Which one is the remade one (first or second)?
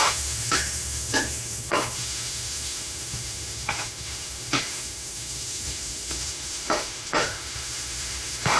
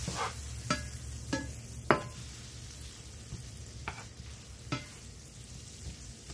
first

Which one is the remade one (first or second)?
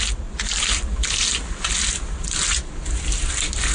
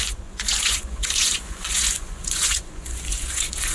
second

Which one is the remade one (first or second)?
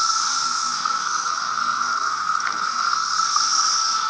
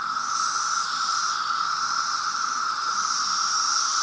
first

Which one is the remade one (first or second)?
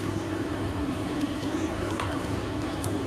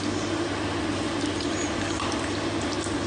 first